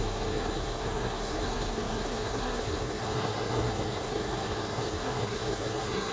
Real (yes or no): no